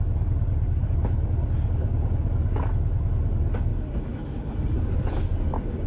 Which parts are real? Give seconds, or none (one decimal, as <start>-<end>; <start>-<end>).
0.0-5.9